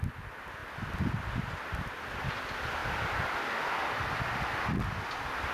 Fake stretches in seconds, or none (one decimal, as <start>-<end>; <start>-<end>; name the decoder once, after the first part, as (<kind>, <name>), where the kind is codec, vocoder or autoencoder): 0.6-2.1 (vocoder, BigVGAN v2)